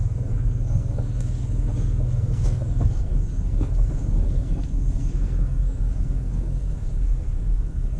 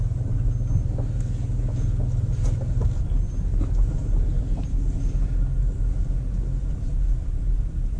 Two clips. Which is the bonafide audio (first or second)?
second